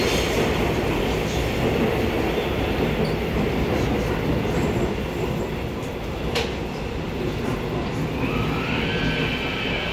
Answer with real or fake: real